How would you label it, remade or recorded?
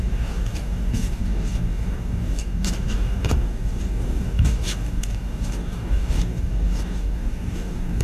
remade